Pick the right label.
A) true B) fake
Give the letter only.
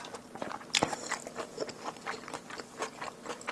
A